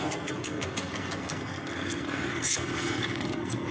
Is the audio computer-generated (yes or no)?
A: yes